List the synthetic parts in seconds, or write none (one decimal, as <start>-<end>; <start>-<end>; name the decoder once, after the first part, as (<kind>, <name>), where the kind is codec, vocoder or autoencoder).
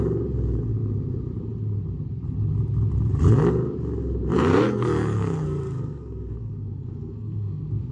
4.5-7.9 (codec, SNAC)